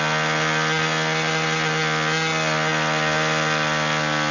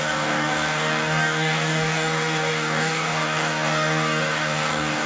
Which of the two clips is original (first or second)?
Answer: first